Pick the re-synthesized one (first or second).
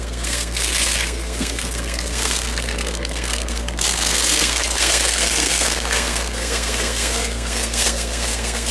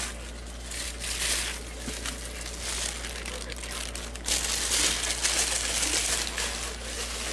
first